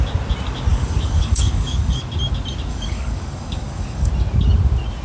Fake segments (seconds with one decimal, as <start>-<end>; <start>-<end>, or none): 0.7-2.0; 2.7-4.1